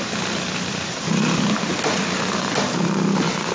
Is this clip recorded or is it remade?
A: recorded